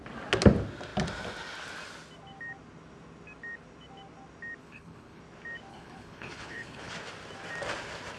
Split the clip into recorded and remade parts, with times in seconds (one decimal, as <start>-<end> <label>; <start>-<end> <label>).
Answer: 0.0-4.6 recorded; 4.6-5.2 remade; 5.2-5.7 recorded; 5.7-6.9 remade; 6.9-8.2 recorded